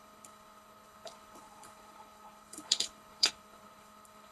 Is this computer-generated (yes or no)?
yes